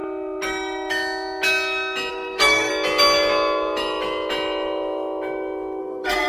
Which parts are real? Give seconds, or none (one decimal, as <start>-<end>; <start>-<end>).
0.0-2.1; 2.7-5.8